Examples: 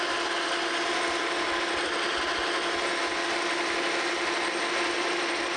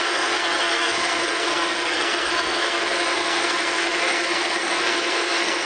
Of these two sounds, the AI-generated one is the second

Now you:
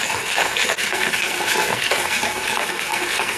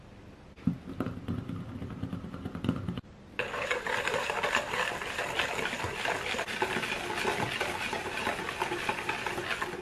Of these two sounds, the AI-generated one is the first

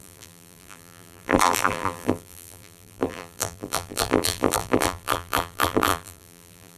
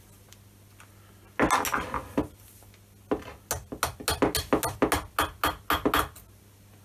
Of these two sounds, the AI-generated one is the first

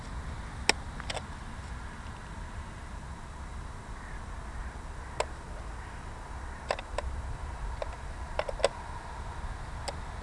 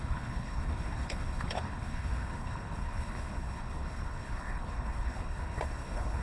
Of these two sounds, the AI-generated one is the second